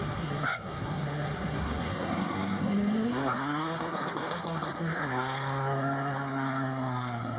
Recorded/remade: remade